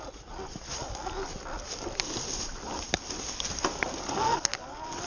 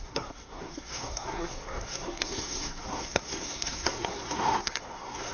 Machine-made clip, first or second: second